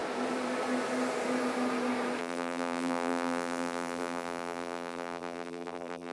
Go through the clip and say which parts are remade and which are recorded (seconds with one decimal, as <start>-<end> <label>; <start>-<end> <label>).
0.0-2.2 recorded; 2.2-6.1 remade